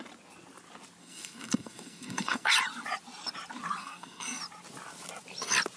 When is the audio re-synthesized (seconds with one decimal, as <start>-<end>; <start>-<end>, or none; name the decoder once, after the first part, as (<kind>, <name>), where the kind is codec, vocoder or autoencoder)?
1.0-2.5 (codec, SNAC); 3.8-4.4